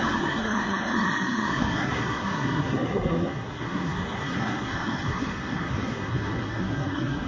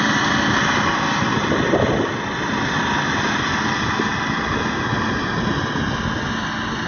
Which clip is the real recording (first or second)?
second